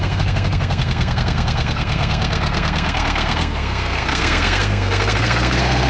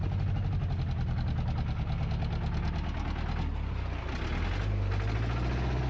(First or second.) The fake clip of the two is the first